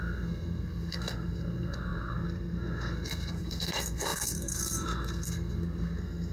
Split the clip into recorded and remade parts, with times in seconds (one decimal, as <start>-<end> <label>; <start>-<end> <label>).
0.0-6.3 remade